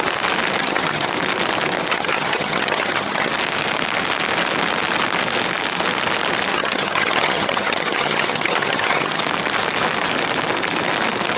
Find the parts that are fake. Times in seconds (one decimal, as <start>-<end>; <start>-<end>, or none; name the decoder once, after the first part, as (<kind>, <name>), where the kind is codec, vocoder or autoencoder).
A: 0.6-1.1 (vocoder, HiFi-GAN); 1.9-3.3; 6.5-9.2